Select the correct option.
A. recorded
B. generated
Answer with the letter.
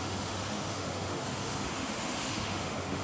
B